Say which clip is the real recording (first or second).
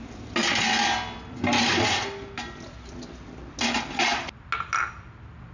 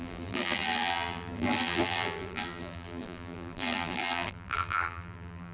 first